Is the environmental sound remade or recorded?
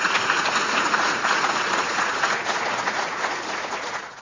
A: remade